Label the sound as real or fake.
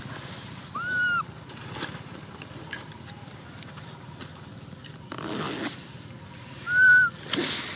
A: real